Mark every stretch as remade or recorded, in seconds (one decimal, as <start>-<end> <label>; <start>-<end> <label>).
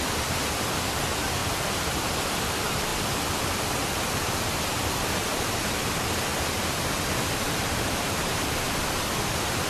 0.0-1.4 remade; 1.4-2.3 recorded; 2.3-9.7 remade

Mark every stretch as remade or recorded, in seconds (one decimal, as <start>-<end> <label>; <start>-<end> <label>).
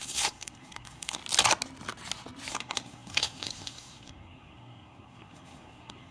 0.0-1.2 remade; 1.2-2.5 recorded; 2.5-6.1 remade